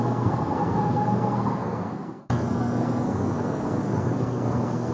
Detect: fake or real fake